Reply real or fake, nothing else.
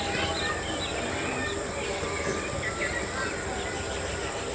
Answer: real